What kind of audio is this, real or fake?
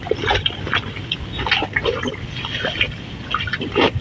real